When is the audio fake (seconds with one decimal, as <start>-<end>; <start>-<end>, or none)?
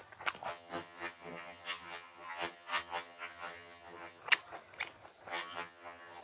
0.5-4.2; 5.3-6.2